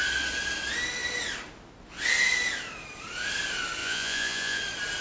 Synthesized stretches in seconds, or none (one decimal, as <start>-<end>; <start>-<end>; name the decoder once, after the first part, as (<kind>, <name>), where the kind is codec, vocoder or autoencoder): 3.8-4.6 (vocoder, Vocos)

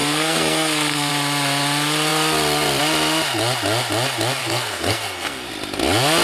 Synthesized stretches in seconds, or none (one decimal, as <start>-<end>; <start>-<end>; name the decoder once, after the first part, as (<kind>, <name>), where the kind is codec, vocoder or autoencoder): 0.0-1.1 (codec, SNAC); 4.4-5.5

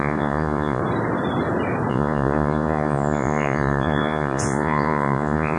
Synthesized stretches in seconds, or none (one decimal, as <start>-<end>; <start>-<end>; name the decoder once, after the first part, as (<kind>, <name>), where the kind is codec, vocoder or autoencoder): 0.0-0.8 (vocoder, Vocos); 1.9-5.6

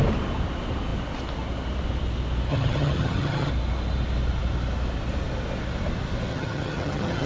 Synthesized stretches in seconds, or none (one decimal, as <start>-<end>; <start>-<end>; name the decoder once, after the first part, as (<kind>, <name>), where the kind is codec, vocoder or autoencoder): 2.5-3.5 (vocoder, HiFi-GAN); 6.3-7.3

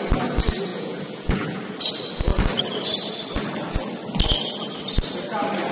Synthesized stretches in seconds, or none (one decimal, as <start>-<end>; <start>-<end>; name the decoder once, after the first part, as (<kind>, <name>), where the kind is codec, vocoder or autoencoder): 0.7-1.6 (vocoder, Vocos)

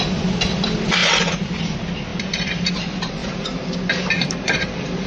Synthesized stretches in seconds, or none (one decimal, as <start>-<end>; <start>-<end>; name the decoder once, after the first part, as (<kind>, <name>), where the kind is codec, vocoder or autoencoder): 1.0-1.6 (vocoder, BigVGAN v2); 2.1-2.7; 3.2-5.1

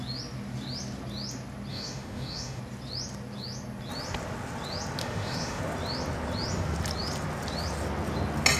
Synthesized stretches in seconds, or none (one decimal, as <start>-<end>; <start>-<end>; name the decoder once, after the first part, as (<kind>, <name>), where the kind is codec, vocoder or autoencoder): 1.7-2.6 (autoencoder, DAC-VAE); 5.0-5.6

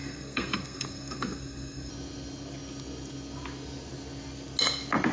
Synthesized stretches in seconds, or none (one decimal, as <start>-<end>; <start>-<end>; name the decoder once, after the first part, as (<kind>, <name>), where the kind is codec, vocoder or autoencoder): 0.0-1.9 (codec, SNAC)